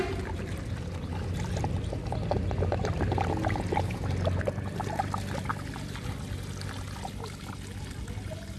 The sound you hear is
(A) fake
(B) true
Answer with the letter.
B